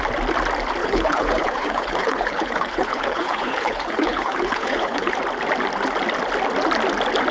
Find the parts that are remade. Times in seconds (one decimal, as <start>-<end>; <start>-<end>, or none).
0.8-5.1